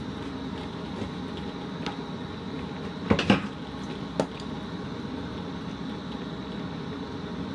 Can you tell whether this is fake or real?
real